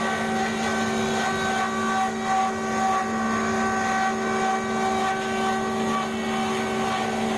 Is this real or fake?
real